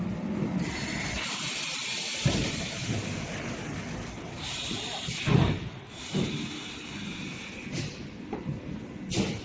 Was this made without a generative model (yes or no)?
yes